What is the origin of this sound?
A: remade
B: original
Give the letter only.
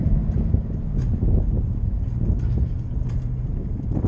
B